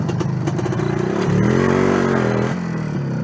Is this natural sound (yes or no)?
yes